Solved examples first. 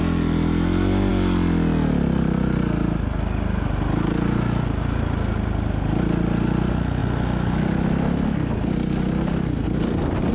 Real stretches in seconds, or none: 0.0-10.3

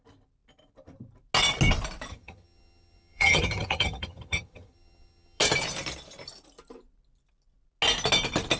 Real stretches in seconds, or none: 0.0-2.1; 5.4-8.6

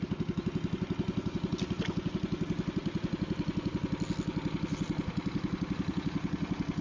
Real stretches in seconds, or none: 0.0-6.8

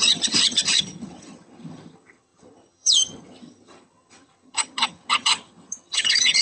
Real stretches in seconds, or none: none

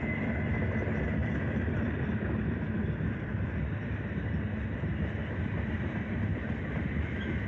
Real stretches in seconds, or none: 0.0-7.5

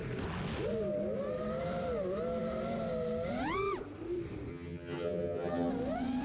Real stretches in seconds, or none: 0.0-4.5; 5.7-6.2

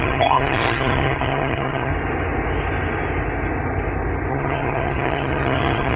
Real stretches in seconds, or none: 1.9-4.3

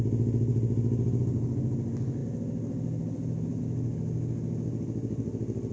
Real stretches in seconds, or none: 0.0-5.7